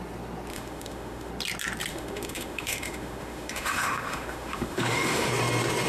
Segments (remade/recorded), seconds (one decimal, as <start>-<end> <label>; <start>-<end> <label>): 0.0-0.5 recorded; 0.5-1.3 remade; 1.3-1.9 recorded; 1.9-5.3 remade; 5.3-5.9 recorded